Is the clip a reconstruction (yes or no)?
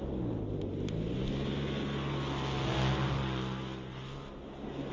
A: no